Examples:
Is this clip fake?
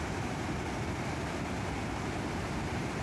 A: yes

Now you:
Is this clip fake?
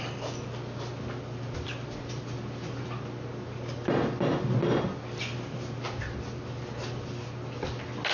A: no